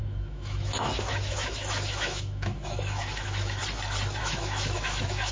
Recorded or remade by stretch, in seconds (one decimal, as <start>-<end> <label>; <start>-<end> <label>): 0.0-3.6 remade; 3.6-4.2 recorded; 4.2-5.3 remade